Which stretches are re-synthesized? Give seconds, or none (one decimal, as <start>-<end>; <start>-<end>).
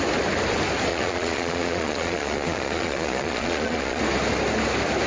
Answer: 0.9-4.0